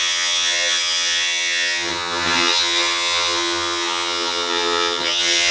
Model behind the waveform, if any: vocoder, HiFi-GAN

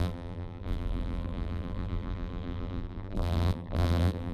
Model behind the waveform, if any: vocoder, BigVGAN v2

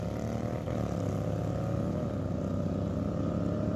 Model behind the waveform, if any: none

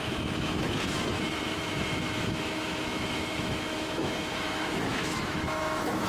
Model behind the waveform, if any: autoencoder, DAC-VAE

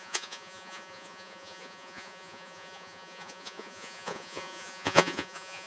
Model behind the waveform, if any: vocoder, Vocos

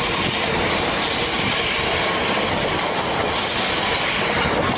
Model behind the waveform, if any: none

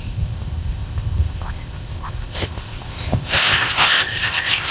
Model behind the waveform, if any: codec, ZipCodec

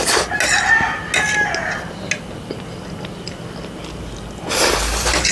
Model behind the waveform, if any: none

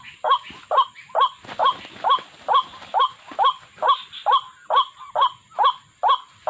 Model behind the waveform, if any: none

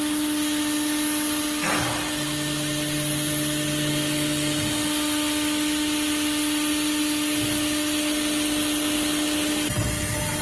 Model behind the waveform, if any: none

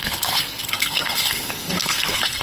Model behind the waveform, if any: codec, SNAC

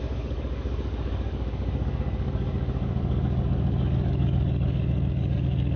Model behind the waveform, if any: codec, DAC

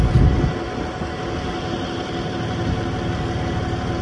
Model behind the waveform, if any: none